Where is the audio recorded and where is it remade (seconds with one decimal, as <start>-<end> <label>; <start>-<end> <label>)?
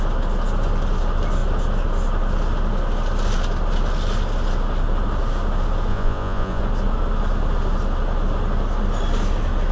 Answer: 0.0-5.9 recorded; 5.9-6.6 remade; 6.6-9.7 recorded